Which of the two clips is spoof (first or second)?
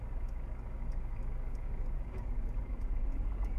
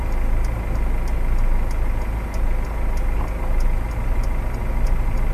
first